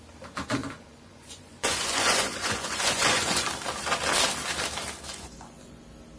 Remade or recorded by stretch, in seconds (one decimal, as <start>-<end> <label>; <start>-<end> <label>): 0.0-0.6 recorded; 0.6-3.5 remade; 3.5-5.1 recorded; 5.1-5.8 remade; 5.8-6.2 recorded